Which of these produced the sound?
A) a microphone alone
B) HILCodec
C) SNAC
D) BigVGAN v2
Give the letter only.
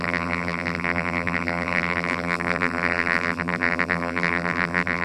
D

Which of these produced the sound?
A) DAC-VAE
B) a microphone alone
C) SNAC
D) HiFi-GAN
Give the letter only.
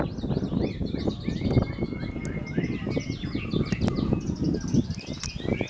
B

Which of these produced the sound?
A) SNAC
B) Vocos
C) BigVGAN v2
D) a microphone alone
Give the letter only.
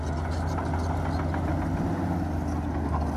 D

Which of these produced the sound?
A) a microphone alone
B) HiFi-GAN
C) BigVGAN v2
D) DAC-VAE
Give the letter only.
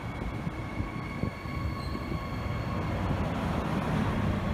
A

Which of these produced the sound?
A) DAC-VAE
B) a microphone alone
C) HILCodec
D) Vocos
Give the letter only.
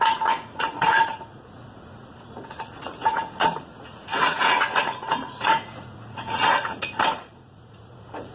D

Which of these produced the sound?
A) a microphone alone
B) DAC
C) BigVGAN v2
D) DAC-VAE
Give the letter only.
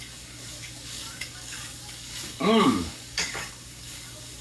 B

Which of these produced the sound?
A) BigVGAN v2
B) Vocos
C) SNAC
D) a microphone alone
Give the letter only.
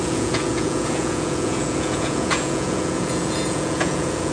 B